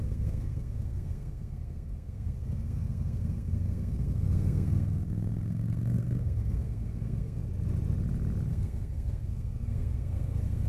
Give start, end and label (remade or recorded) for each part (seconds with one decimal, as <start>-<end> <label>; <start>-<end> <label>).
0.0-7.4 remade; 7.4-8.5 recorded; 8.5-10.7 remade